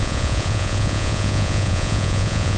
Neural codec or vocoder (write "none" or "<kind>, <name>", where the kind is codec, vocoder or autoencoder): vocoder, Vocos